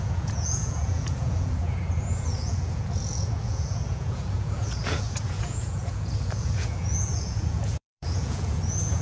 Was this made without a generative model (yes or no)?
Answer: no